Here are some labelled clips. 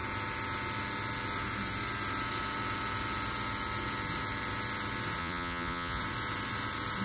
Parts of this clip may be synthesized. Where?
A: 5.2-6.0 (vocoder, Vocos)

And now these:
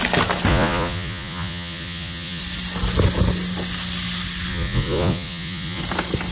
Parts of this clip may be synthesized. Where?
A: 0.5-2.4 (vocoder, Vocos); 4.5-5.8

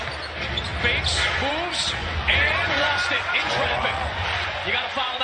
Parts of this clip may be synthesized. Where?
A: 2.0-5.2 (vocoder, Vocos)

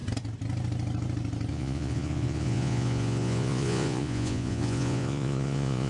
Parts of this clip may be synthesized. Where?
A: 1.5-5.9 (vocoder, Vocos)

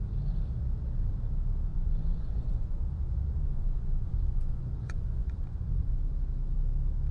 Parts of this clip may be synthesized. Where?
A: 1.7-6.0 (vocoder, Vocos)

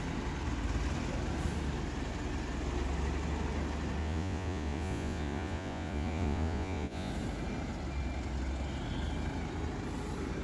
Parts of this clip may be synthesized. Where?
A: 4.0-7.1 (vocoder, Vocos)

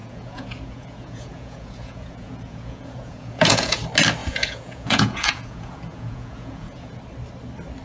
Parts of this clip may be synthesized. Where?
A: 0.0-3.8 (vocoder, Vocos); 4.2-7.0